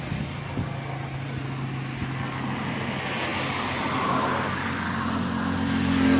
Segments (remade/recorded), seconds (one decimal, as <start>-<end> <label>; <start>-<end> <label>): 0.0-6.2 recorded